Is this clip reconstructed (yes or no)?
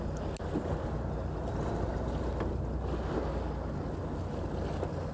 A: no